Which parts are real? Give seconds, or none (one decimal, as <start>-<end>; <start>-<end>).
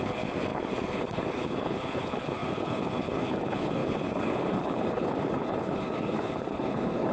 none